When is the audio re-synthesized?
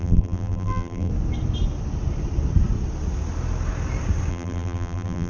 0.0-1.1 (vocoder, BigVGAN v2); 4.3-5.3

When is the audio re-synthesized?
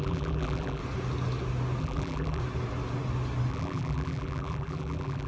0.0-0.8 (vocoder, BigVGAN v2); 1.8-2.4; 3.5-5.3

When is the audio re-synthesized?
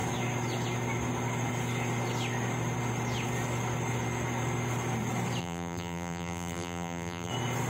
5.4-7.3 (vocoder, BigVGAN v2)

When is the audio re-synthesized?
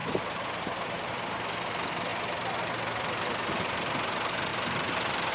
0.0-1.1 (vocoder, BigVGAN v2); 4.5-5.3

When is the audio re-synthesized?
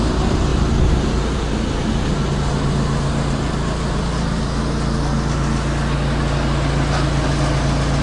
0.5-2.2 (vocoder, BigVGAN v2)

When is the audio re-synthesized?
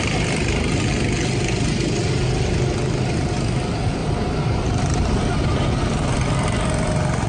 4.0-5.2 (vocoder, BigVGAN v2)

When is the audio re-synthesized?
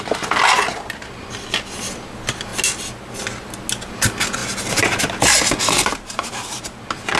5.6-6.8 (vocoder, BigVGAN v2)